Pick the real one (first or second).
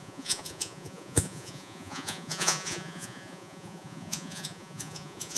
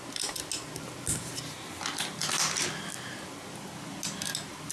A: second